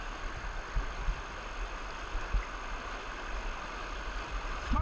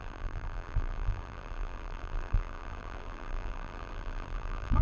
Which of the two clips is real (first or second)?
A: first